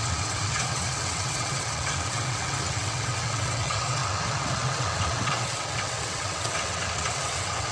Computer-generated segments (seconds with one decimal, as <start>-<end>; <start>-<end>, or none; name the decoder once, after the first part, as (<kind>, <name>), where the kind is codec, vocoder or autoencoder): 0.0-7.7 (vocoder, WaveNeXt)